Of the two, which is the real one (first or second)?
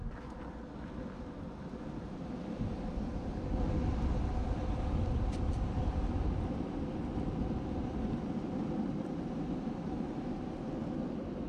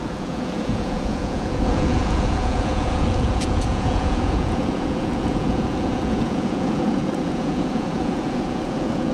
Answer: first